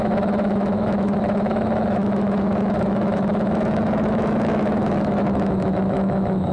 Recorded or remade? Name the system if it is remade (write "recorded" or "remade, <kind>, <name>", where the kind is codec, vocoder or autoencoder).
remade, autoencoder, DAC-VAE